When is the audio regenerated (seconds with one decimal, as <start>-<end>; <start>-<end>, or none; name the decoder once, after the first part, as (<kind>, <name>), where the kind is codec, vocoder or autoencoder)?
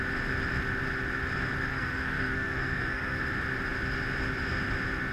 1.7-3.2 (codec, SNAC)